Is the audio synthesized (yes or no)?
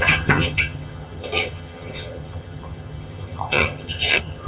yes